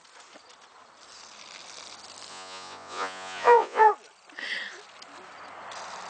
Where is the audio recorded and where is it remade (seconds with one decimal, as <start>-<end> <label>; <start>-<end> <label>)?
0.0-2.3 recorded; 2.3-3.9 remade; 3.9-6.1 recorded